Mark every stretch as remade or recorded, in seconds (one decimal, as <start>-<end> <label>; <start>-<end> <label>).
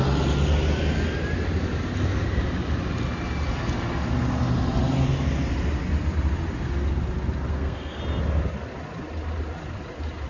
0.0-7.5 recorded; 7.5-8.0 remade; 8.0-10.3 recorded